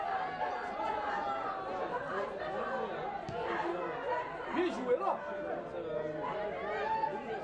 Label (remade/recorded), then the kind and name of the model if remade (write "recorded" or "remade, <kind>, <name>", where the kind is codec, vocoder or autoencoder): recorded